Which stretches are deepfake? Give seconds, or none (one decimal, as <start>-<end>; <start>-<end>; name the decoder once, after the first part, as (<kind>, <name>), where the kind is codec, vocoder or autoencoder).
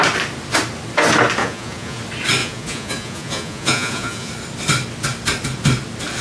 1.4-2.0 (vocoder, Vocos); 2.4-4.3